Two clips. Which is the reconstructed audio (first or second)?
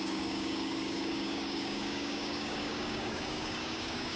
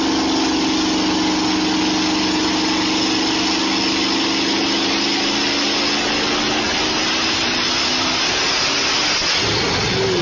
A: first